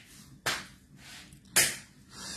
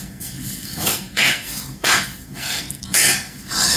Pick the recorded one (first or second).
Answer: first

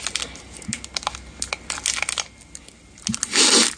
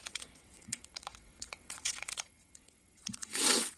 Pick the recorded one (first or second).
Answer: first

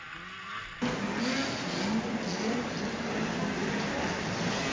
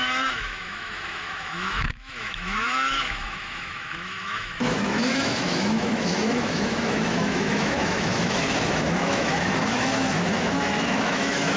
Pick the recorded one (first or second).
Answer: first